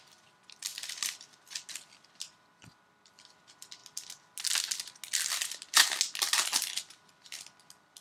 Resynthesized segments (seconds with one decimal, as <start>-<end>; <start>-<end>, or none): none